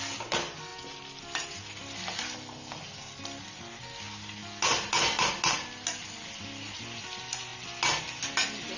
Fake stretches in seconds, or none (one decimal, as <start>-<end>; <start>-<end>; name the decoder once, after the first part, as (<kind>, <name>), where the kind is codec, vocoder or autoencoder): none